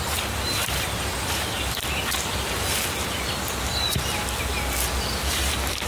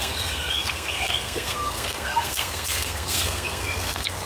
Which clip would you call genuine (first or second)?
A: first